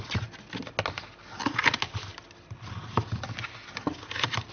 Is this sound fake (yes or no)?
no